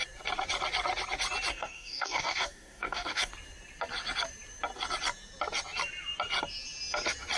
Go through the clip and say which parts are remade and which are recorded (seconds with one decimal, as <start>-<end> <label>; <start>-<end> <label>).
0.0-1.5 recorded; 1.5-3.3 remade; 3.3-7.4 recorded